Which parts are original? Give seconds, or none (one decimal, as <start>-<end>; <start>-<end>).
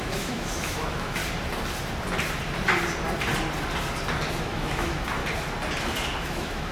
1.2-4.4; 5.2-6.2